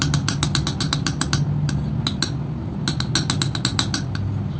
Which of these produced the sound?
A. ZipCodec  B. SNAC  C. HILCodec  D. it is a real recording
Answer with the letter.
D